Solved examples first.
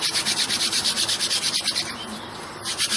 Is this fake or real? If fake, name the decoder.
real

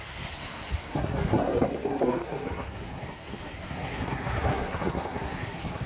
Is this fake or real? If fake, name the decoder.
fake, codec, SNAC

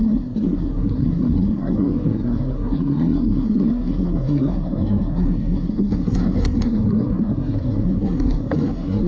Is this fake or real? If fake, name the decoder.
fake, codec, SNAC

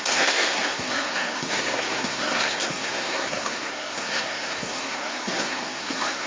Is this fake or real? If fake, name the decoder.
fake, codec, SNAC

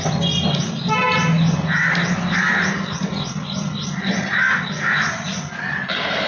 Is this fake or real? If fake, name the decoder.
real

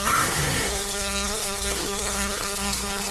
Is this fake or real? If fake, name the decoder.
fake, codec, SNAC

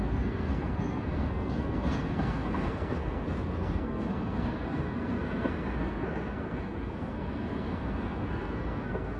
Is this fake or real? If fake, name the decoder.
fake, codec, SNAC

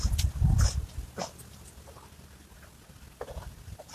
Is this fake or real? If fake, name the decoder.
real